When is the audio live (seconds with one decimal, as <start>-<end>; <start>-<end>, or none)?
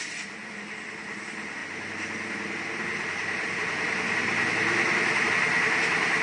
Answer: 0.0-6.2